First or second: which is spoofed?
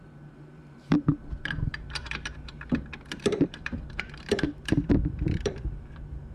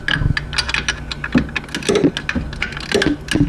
first